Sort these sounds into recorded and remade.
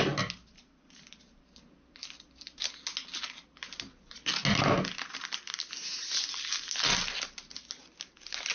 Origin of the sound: recorded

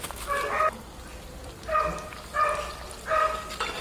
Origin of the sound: recorded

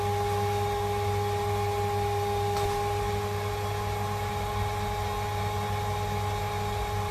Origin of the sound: recorded